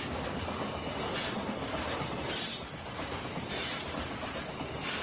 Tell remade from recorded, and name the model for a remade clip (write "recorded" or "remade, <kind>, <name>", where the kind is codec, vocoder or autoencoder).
recorded